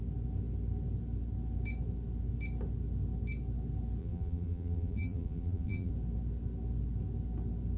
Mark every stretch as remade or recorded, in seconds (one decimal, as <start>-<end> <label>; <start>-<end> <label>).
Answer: 0.0-4.0 recorded; 4.0-5.9 remade; 5.9-7.8 recorded